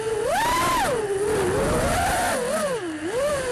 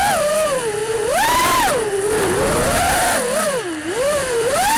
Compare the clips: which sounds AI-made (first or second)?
second